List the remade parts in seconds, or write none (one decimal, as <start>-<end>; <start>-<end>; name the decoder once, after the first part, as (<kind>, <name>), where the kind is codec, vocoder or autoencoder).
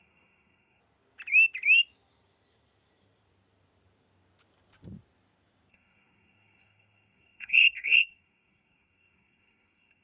0.0-0.8 (codec, SNAC); 5.7-10.0